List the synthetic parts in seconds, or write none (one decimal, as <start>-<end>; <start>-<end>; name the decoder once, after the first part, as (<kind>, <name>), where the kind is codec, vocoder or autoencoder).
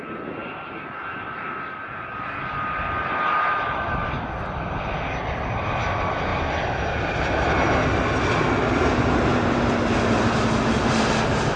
0.4-4.8 (vocoder, BigVGAN v2)